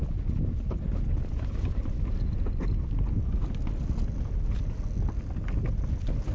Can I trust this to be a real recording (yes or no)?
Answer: yes